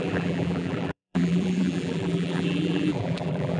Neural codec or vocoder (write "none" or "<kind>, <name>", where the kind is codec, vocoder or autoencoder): vocoder, BigVGAN v2